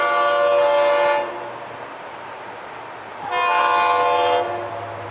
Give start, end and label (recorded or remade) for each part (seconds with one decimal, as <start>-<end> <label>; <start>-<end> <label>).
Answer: 0.0-5.1 recorded